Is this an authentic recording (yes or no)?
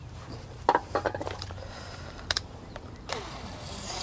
no